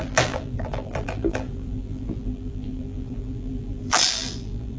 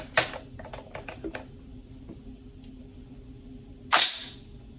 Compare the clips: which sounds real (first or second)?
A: second